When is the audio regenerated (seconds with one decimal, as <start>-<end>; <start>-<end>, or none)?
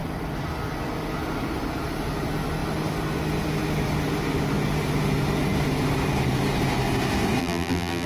7.4-8.1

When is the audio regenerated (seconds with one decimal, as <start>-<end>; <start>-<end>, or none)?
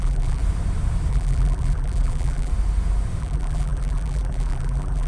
0.0-0.4; 1.1-2.5; 3.2-5.1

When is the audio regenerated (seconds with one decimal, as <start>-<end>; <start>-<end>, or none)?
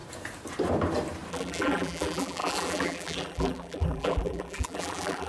1.3-5.3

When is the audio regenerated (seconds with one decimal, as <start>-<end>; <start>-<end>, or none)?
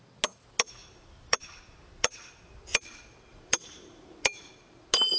0.8-2.3; 3.3-4.4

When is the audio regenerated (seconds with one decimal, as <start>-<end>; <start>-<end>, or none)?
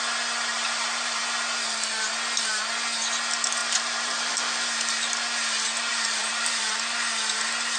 0.5-1.2; 3.6-4.3; 5.9-6.7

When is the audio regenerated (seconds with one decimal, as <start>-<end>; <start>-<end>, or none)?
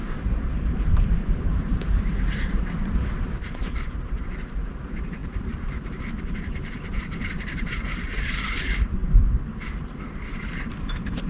0.0-9.0; 9.6-11.3